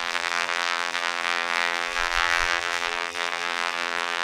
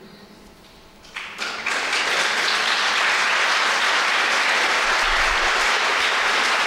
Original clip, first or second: second